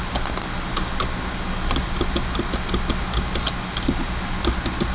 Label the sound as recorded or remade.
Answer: recorded